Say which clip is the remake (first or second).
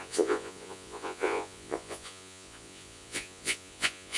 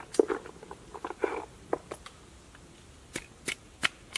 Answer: first